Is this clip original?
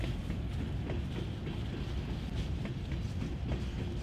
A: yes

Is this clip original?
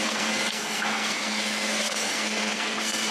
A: no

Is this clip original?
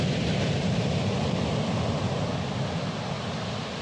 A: yes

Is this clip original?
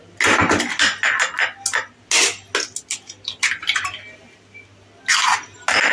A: yes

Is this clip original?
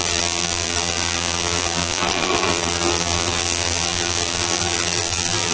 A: no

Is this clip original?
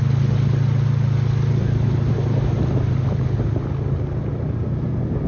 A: yes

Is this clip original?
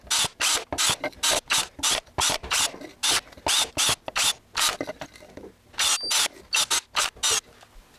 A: yes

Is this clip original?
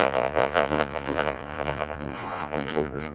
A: no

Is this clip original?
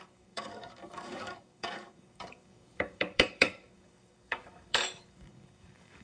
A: no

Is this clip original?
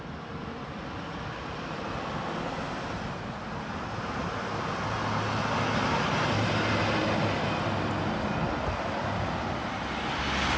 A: yes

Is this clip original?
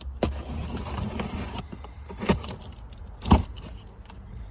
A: yes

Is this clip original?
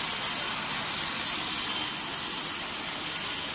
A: yes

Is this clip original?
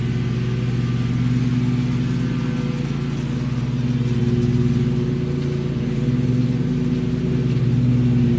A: yes